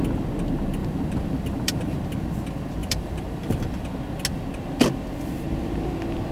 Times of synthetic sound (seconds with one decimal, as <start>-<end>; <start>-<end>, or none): 0.8-2.1; 2.8-3.8